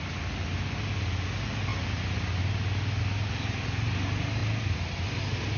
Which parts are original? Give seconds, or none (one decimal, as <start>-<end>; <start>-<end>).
0.0-5.6